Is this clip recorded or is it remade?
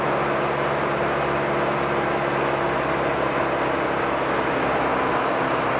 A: recorded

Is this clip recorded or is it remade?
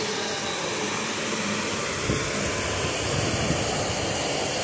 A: recorded